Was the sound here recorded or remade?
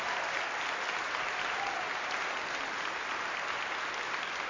recorded